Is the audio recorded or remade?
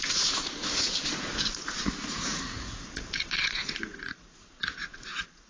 remade